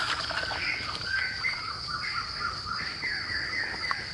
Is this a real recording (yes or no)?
no